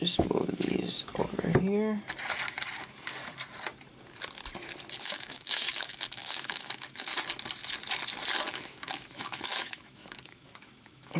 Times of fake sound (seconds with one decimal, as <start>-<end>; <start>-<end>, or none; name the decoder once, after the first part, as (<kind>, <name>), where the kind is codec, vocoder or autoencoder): 0.0-1.1 (autoencoder, DAC-VAE); 5.0-7.1; 8.5-11.2